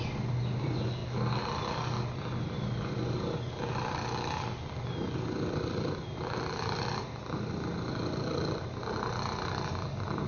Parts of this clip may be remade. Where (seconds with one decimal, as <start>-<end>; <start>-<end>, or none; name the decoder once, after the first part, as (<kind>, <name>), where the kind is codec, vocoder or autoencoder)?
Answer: none